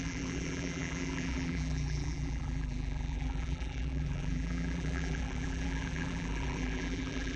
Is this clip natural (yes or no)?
no